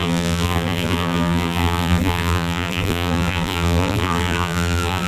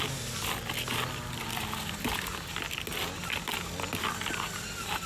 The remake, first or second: first